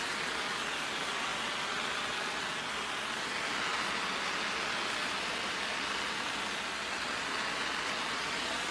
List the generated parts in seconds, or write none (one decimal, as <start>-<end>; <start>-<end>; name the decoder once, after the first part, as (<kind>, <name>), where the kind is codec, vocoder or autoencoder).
none